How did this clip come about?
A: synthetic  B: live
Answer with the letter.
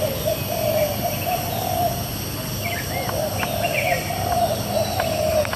B